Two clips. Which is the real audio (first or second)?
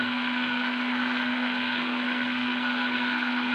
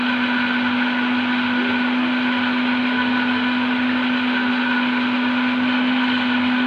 second